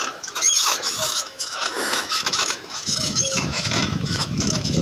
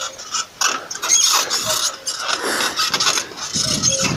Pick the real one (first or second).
second